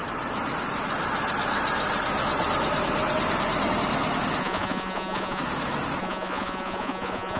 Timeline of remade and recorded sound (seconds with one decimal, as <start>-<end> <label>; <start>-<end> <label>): 0.0-4.4 recorded; 4.4-5.4 remade; 5.4-6.0 recorded; 6.0-7.4 remade